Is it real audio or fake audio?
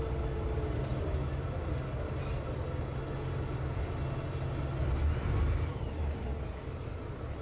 real